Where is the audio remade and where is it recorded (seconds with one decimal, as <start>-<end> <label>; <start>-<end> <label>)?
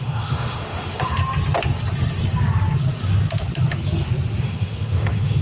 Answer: 0.0-1.2 remade; 1.2-4.4 recorded; 4.4-5.4 remade